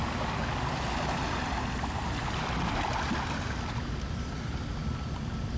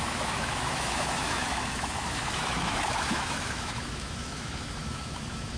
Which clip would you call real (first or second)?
first